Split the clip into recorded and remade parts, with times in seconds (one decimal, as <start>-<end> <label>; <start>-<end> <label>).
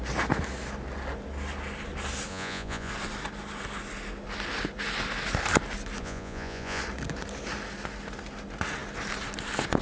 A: 0.0-2.3 recorded; 2.3-2.9 remade; 2.9-6.0 recorded; 6.0-6.8 remade; 6.8-9.8 recorded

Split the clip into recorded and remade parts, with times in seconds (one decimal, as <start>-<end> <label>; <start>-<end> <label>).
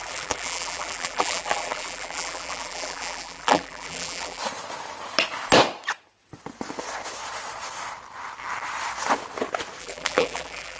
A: 0.0-4.4 remade; 4.4-9.8 recorded; 9.8-10.8 remade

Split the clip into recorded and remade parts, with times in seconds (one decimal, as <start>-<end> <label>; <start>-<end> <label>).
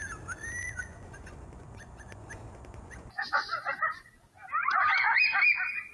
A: 0.0-0.6 recorded; 0.6-4.1 remade; 4.1-4.6 recorded; 4.6-5.2 remade; 5.2-5.9 recorded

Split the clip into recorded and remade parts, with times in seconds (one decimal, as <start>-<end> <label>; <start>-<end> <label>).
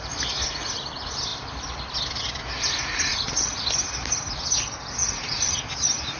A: 0.0-3.1 recorded; 3.1-3.6 remade; 3.6-5.0 recorded; 5.0-5.6 remade; 5.6-6.2 recorded